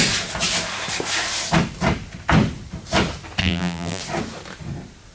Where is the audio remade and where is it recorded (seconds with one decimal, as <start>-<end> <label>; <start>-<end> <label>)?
0.0-3.4 recorded; 3.4-4.0 remade; 4.0-5.1 recorded